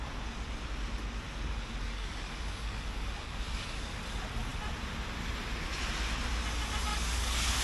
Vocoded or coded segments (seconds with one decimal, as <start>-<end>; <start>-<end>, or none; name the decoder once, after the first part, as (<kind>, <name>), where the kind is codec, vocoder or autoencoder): 1.8-4.0 (codec, DAC); 6.9-7.6